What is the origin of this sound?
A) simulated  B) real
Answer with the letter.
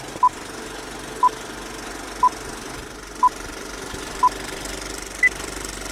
B